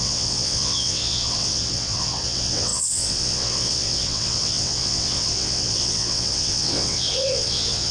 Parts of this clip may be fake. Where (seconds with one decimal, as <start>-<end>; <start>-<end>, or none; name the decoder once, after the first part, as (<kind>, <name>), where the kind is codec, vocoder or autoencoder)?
0.0-7.9 (vocoder, WaveNeXt)